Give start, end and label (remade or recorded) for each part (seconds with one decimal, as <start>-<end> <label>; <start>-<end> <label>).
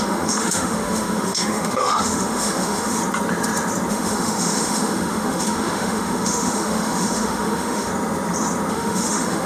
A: 0.0-3.0 remade; 3.0-3.9 recorded; 3.9-7.9 remade; 7.9-8.7 recorded; 8.7-9.5 remade